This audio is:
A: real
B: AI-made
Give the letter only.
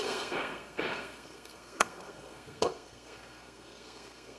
B